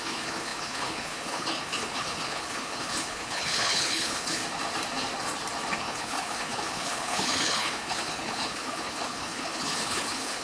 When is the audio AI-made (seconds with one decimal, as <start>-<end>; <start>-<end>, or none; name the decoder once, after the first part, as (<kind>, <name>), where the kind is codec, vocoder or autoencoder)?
0.0-4.4 (codec, HILCodec); 5.8-10.4